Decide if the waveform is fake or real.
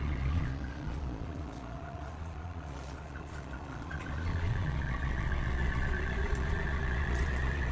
fake